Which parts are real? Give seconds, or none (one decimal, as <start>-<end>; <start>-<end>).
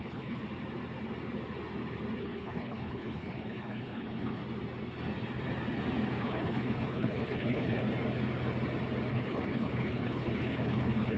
0.4-2.2; 4.4-6.2; 7.8-9.1